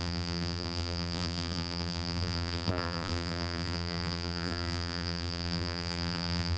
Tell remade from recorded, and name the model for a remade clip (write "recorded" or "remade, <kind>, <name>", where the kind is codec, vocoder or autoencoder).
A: remade, vocoder, BigVGAN v2